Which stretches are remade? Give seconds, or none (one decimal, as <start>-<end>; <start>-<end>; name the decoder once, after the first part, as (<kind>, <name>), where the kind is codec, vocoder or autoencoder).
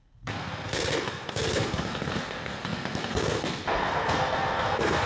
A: 0.0-5.1 (codec, SNAC)